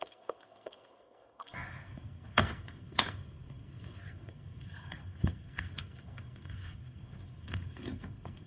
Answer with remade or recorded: remade